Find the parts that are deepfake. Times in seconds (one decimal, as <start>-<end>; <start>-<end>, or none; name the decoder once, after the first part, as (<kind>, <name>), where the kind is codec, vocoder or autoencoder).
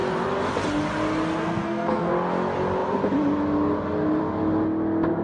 1.4-2.1 (codec, SNAC)